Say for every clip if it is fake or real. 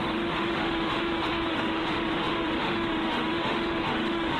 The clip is fake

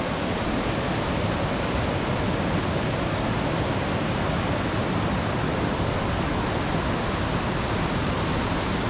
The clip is real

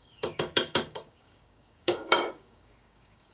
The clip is fake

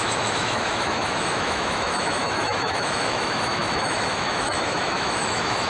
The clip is fake